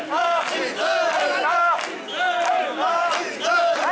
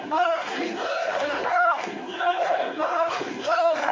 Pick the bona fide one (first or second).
first